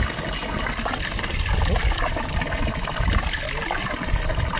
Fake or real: real